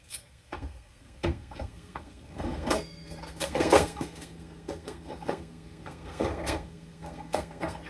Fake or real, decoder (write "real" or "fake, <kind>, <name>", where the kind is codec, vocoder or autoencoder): fake, codec, SNAC